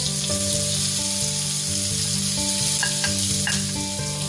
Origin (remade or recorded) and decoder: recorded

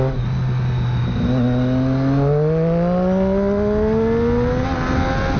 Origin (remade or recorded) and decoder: recorded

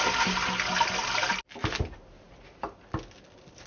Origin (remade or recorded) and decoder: recorded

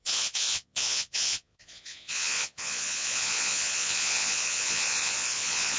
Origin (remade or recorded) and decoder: remade, vocoder, Vocos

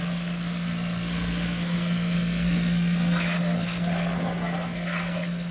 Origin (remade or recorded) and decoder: remade, codec, SNAC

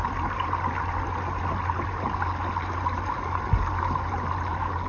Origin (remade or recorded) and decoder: recorded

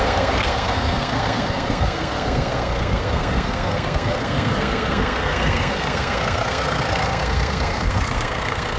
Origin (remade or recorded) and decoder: remade, codec, SNAC